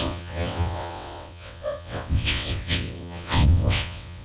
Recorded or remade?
remade